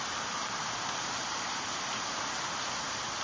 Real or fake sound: fake